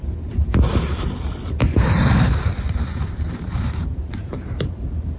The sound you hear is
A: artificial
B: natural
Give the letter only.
A